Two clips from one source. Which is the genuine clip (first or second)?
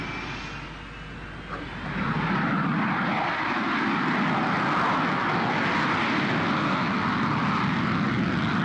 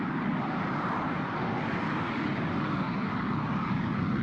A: first